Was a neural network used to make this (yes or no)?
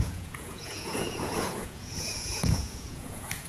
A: yes